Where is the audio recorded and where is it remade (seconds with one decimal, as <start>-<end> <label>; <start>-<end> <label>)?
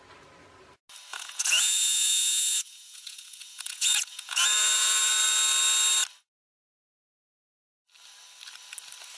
0.0-1.1 recorded; 1.1-5.1 remade; 5.1-9.2 recorded